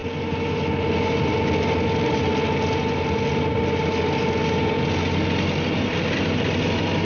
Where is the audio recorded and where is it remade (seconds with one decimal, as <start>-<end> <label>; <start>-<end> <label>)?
0.0-7.0 recorded